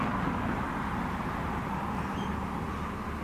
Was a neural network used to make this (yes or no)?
no